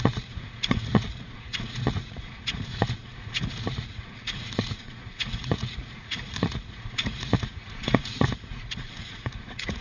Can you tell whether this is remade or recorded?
remade